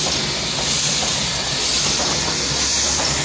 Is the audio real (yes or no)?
yes